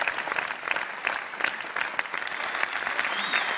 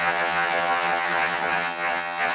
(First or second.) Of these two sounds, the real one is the first